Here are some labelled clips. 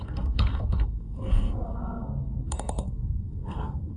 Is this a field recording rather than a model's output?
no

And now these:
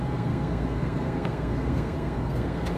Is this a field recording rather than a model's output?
no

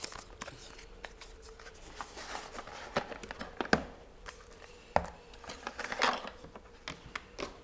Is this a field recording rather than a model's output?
yes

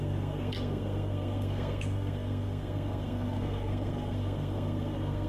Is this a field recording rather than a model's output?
no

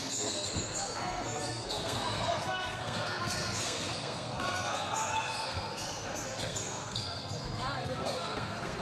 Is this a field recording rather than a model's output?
no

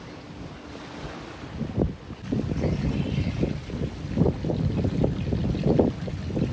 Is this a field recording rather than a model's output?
yes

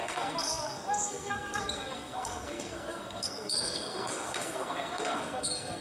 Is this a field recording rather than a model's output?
no